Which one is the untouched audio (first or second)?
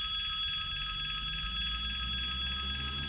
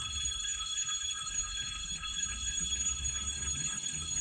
first